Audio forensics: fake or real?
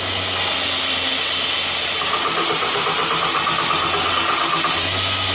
real